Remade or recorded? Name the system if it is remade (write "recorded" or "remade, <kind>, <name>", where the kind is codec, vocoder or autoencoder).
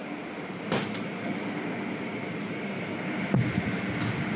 recorded